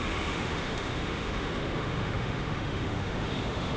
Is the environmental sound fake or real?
fake